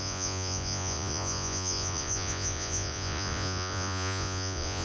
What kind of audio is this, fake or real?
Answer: fake